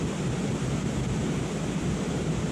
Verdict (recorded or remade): recorded